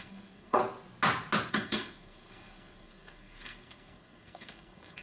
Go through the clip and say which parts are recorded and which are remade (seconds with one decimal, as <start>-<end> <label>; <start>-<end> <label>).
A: 0.0-0.6 remade; 0.6-1.5 recorded; 1.5-5.0 remade